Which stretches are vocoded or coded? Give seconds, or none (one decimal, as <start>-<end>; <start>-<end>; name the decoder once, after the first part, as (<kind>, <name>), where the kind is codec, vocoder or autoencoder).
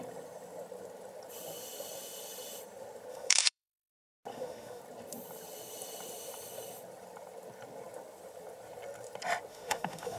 3.1-3.9 (autoencoder, DAC-VAE); 4.3-4.8; 9.5-10.2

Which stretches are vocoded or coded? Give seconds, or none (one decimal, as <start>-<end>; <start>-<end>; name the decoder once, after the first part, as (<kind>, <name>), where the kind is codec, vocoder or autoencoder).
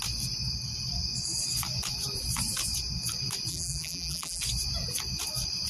3.5-4.4 (vocoder, BigVGAN v2)